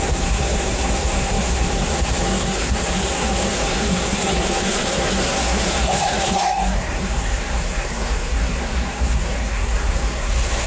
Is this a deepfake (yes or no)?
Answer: yes